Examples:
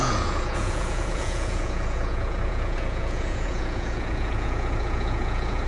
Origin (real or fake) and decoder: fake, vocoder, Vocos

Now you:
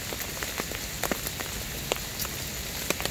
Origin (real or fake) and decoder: real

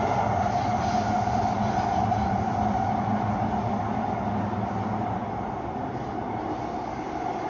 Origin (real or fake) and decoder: real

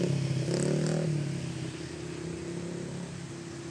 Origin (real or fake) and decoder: real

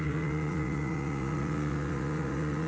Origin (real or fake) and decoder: fake, vocoder, Vocos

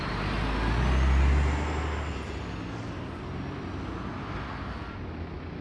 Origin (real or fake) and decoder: real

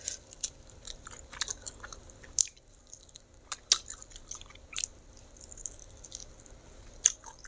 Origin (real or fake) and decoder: real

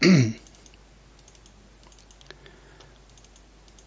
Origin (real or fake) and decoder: real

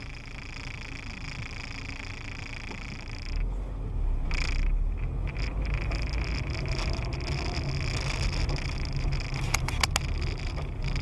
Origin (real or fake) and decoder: real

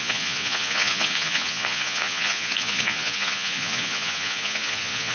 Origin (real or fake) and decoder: fake, vocoder, Vocos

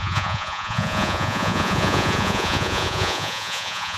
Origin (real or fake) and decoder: fake, vocoder, Vocos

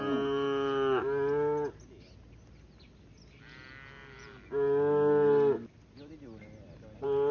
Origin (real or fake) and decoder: real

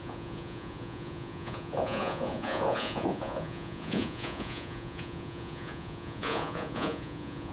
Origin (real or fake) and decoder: fake, vocoder, Vocos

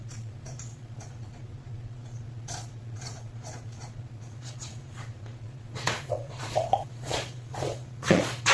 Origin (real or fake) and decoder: fake, vocoder, Vocos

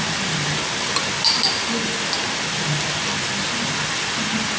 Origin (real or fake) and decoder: real